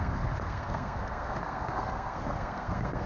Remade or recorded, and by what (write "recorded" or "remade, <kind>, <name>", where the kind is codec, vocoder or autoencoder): remade, codec, SNAC